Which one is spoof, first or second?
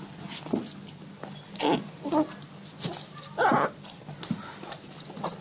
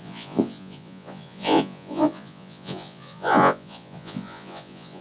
second